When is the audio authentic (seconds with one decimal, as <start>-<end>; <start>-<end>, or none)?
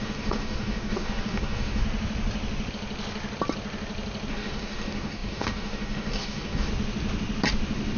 1.8-4.3; 6.7-8.0